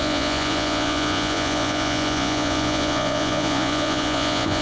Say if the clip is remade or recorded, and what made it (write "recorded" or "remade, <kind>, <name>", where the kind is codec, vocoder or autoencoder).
remade, vocoder, Vocos